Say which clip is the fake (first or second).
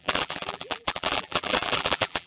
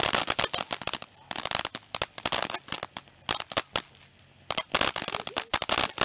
first